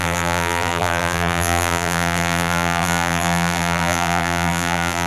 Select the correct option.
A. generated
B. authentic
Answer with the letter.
A